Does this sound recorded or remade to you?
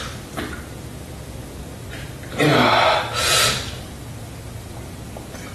recorded